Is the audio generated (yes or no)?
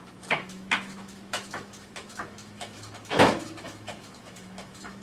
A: yes